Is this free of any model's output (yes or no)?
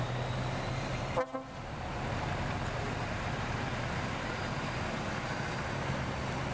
yes